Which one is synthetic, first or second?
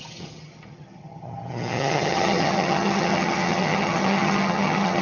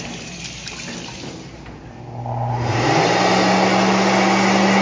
first